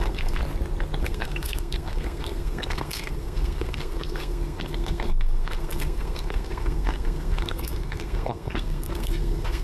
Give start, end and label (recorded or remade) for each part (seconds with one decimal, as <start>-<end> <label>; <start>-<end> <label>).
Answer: 0.0-0.4 remade; 0.4-1.0 recorded; 1.0-9.6 remade